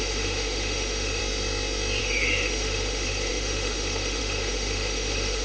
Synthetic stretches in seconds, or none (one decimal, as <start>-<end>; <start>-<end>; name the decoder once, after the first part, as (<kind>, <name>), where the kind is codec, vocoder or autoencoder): 0.0-1.2 (autoencoder, DAC-VAE); 2.0-5.4